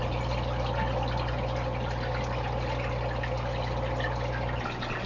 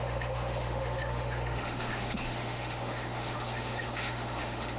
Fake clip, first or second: second